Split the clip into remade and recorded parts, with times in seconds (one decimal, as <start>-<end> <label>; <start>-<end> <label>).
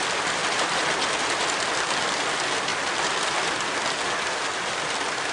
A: 0.0-0.4 remade; 0.4-1.2 recorded; 1.2-2.7 remade; 2.7-4.7 recorded; 4.7-5.3 remade